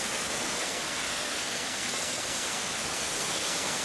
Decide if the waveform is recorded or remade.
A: remade